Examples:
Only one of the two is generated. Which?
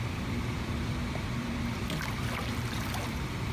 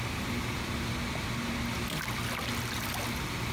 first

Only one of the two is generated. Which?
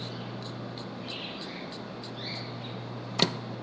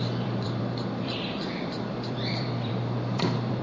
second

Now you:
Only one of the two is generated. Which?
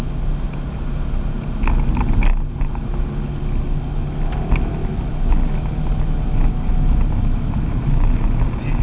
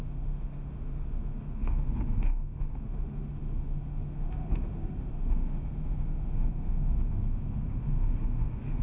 second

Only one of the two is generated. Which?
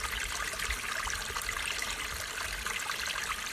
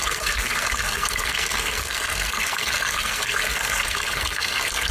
second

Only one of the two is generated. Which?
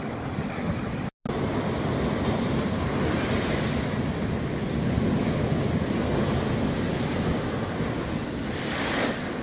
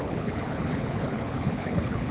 second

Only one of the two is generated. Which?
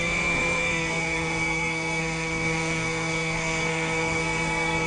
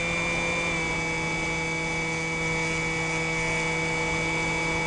first